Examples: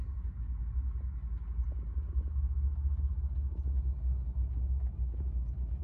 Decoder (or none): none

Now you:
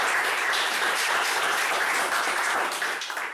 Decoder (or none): vocoder, BigVGAN v2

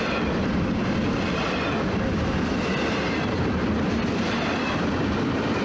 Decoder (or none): vocoder, BigVGAN v2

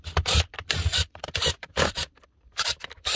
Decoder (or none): vocoder, BigVGAN v2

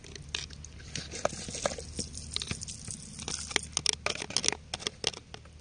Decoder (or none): none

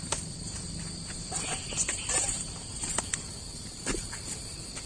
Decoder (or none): vocoder, BigVGAN v2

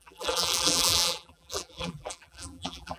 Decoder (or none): vocoder, BigVGAN v2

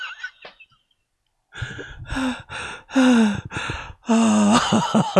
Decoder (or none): none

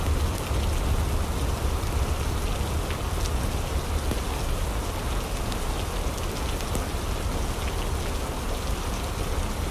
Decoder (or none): none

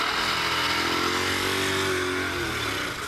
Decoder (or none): none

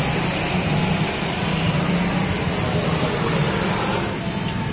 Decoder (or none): none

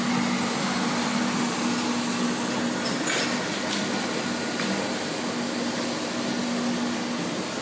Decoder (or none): none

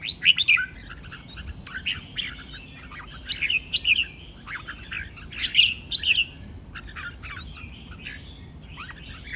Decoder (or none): none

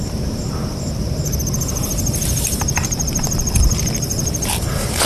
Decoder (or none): vocoder, BigVGAN v2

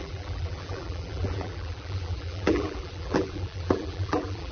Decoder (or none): vocoder, BigVGAN v2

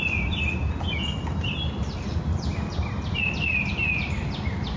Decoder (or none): none